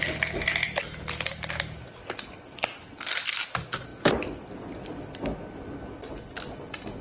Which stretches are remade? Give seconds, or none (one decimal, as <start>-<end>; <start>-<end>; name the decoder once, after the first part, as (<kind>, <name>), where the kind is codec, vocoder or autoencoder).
none